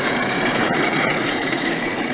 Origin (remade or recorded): remade